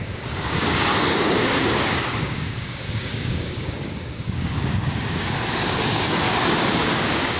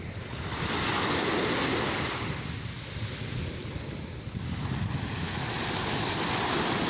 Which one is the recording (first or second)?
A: second